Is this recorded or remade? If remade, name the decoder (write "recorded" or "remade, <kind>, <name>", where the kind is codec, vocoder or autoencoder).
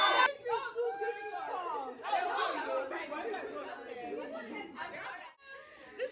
recorded